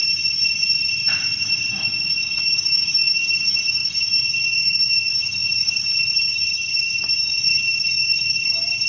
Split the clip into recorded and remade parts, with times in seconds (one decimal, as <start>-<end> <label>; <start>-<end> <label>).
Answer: 0.0-1.7 recorded; 1.7-8.9 remade